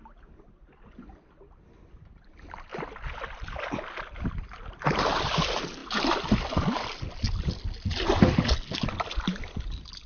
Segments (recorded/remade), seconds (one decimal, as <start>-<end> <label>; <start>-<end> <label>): 0.0-10.1 recorded